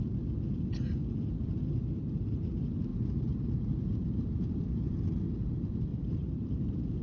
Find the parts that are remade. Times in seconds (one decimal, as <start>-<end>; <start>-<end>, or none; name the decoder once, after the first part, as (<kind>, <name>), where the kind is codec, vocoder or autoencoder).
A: 2.9-5.0 (vocoder, BigVGAN v2); 5.9-7.0